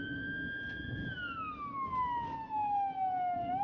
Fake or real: real